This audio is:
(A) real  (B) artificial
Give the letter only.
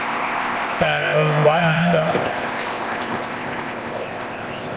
B